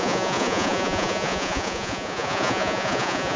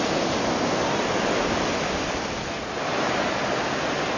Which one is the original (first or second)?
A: second